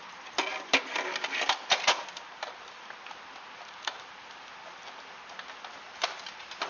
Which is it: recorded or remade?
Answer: recorded